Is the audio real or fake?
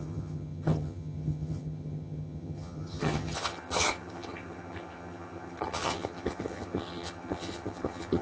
fake